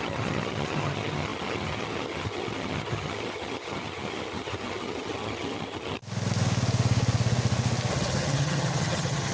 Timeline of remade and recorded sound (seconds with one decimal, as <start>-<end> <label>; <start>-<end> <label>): 0.0-6.0 remade; 6.0-7.9 recorded; 7.9-9.3 remade